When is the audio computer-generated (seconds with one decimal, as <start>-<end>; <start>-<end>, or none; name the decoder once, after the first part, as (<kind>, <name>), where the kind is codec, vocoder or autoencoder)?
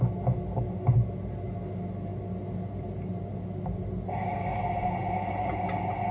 none